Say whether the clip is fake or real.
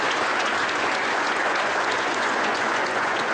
fake